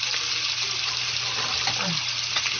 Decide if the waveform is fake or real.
real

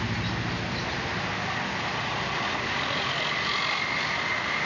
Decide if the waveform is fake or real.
real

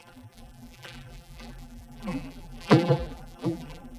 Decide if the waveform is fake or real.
fake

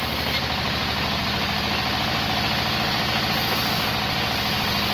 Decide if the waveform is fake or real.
real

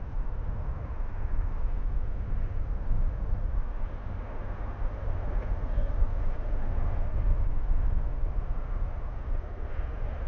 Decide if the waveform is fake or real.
fake